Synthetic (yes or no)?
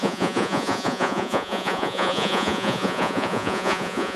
yes